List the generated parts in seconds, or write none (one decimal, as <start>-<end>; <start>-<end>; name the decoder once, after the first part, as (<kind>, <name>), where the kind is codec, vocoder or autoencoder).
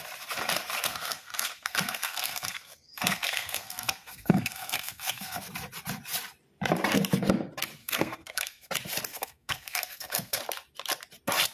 0.9-5.4 (codec, SNAC); 7.8-8.7; 9.1-10.4